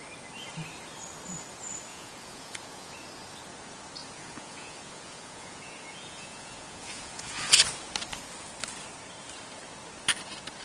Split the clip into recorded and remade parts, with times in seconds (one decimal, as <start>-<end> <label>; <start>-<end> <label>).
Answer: 0.0-1.9 recorded; 1.9-2.9 remade; 2.9-4.0 recorded; 4.0-7.5 remade; 7.5-10.6 recorded